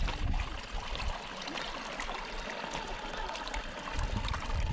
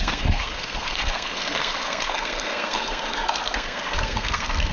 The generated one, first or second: second